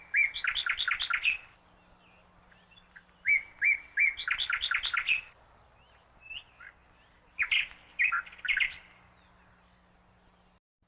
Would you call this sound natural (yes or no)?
yes